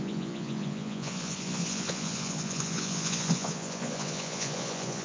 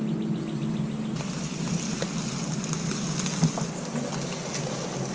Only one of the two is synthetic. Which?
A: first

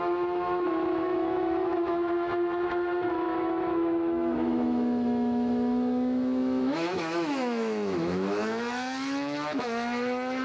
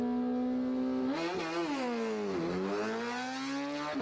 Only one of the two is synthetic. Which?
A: first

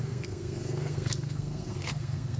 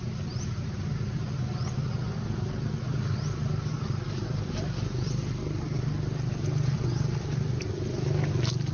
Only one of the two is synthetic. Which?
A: first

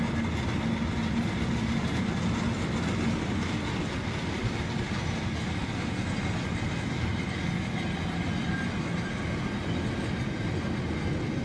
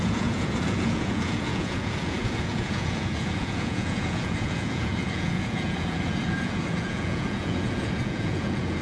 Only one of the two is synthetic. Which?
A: second